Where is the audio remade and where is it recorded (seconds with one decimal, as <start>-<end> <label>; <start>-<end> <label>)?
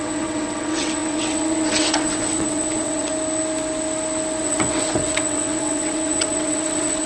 0.0-3.1 remade; 3.1-4.4 recorded; 4.4-7.1 remade